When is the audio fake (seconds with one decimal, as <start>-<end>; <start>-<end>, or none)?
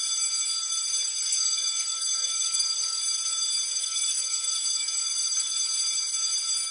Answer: 1.1-3.0; 3.8-5.5